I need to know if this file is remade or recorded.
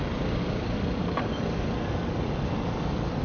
recorded